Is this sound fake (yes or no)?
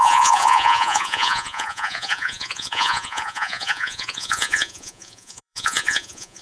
yes